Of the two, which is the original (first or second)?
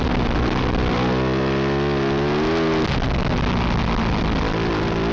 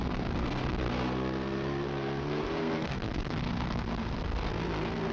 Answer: first